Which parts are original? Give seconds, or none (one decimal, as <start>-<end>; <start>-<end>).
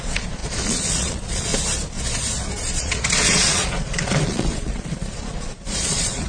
1.5-2.8